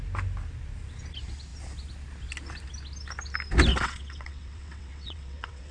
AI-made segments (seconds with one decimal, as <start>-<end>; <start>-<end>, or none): 3.7-5.7